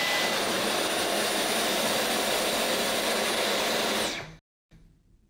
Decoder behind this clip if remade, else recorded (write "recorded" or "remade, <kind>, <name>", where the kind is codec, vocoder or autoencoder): recorded